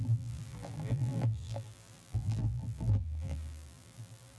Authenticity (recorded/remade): remade